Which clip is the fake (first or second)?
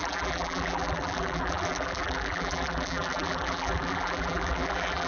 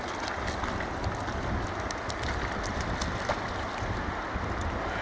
first